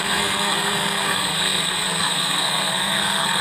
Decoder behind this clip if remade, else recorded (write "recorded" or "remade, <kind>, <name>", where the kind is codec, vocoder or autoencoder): remade, codec, SNAC